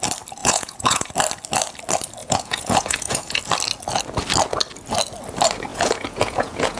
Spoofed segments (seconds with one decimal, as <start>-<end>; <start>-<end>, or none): 0.4-1.1; 2.2-3.4; 5.7-6.8